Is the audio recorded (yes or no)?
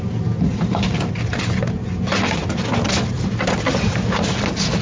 yes